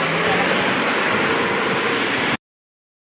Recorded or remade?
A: recorded